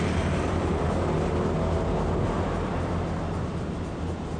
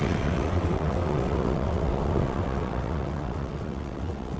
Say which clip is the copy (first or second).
second